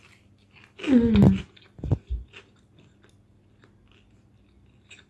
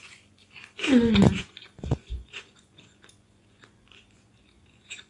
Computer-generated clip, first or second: second